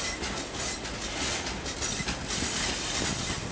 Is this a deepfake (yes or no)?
no